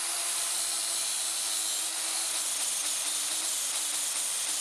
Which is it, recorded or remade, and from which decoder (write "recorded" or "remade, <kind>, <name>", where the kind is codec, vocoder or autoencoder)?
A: recorded